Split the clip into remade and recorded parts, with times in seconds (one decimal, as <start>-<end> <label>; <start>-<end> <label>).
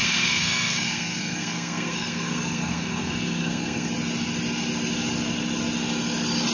0.0-3.9 remade; 3.9-6.5 recorded